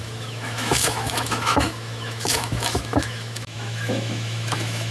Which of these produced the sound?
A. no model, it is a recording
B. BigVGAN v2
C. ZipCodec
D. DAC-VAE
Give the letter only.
D